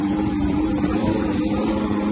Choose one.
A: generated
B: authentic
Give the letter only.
A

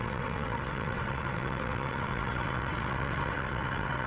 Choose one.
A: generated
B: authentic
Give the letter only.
A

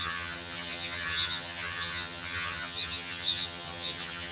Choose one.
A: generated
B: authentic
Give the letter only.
A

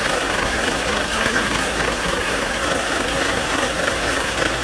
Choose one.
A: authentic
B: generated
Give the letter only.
B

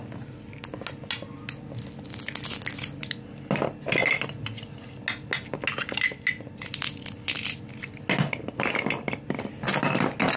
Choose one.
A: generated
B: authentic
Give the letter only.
B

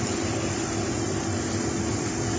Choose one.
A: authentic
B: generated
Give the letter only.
B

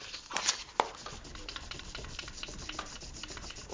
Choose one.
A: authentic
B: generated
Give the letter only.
A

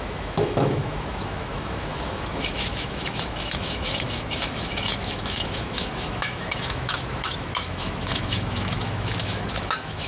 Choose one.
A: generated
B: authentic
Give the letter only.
A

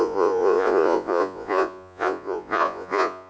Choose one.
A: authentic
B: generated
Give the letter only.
B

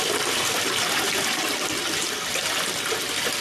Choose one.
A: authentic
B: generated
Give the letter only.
A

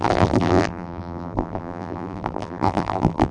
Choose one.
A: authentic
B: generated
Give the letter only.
B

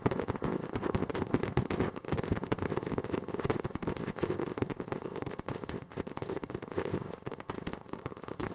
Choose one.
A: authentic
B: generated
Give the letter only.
B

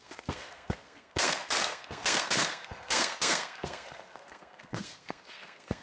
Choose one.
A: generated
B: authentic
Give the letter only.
A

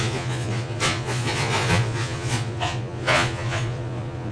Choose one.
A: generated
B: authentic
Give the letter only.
A